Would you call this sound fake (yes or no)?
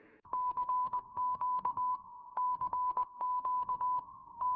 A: yes